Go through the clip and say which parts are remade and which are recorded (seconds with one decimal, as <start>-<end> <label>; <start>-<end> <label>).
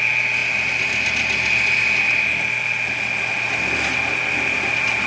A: 0.0-5.1 recorded